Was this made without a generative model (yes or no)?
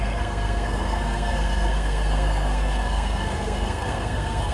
no